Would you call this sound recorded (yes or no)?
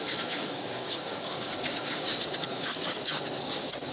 no